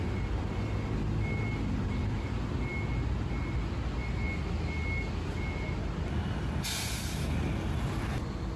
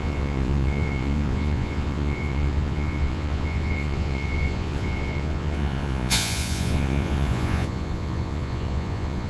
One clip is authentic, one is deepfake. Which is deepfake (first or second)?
second